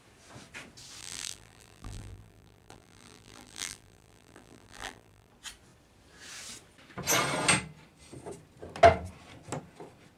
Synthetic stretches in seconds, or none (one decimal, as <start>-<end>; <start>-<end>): 1.0-5.3